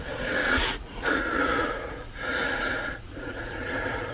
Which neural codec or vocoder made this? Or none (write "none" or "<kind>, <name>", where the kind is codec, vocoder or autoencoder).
vocoder, Vocos